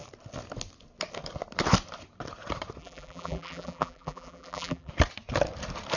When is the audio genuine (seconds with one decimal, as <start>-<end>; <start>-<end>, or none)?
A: 0.0-2.8; 4.9-6.0